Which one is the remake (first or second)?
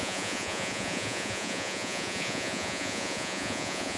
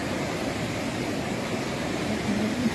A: first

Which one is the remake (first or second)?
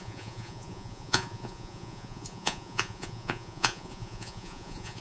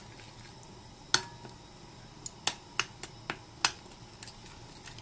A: first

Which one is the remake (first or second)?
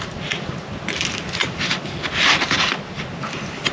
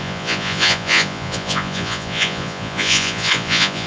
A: second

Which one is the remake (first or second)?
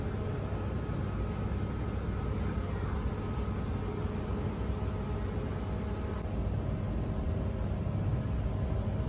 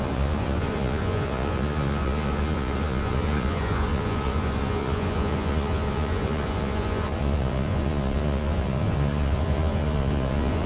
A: second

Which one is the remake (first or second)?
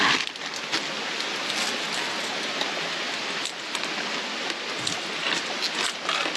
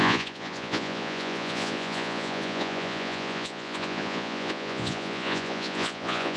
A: second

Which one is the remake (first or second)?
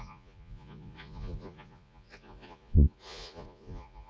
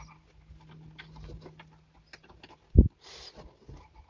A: first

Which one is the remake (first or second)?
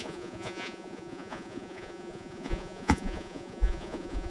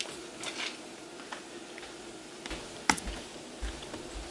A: first